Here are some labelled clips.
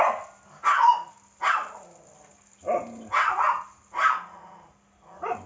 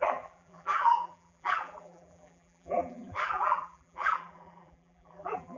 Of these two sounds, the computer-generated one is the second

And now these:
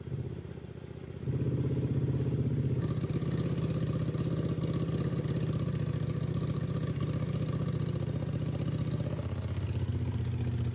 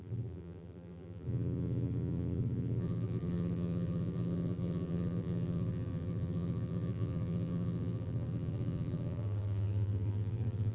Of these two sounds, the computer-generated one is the second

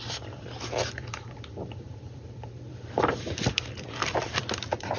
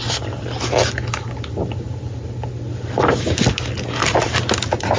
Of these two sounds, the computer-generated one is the first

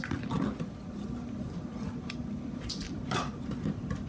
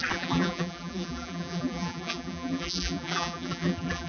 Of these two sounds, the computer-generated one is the second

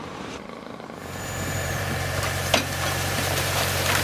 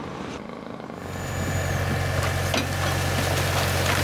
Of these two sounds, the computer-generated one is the first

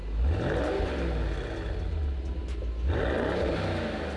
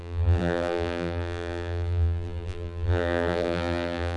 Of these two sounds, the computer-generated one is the second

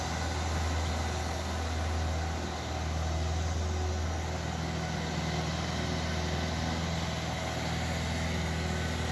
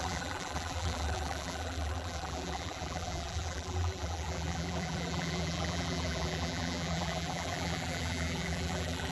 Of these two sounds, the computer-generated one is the second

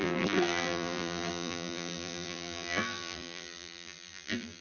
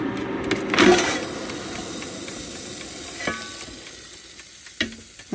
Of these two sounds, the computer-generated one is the first